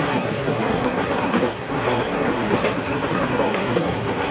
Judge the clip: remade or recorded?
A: remade